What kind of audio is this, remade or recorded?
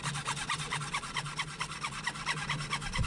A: recorded